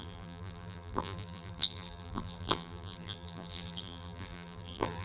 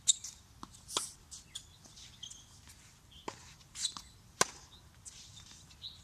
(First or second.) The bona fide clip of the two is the second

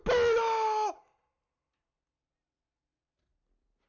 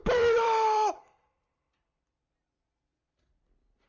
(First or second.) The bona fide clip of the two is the first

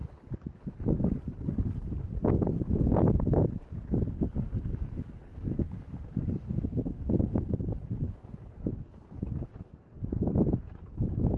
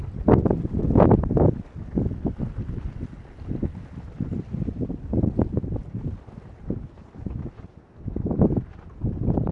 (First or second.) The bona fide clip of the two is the second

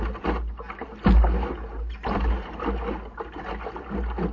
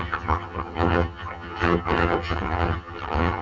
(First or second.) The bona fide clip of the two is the first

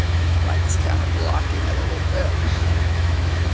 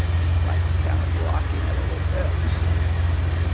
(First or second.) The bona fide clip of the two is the second